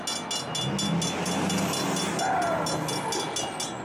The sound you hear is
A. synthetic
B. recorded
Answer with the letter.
B